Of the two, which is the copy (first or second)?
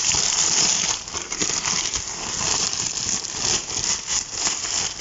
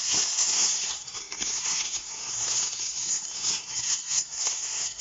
second